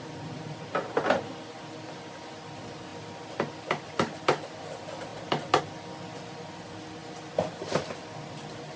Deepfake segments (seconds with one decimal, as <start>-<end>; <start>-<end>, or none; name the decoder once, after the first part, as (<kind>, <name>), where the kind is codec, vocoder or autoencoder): none